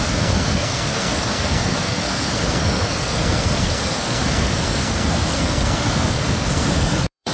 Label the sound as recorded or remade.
remade